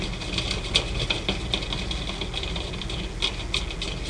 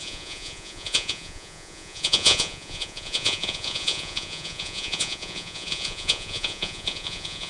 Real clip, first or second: first